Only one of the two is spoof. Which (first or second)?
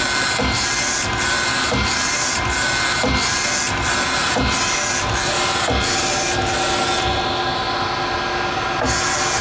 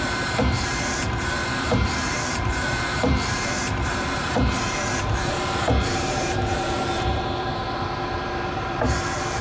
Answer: second